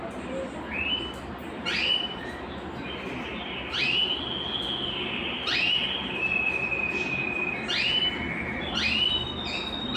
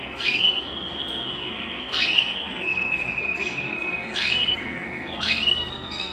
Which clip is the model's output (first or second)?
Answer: second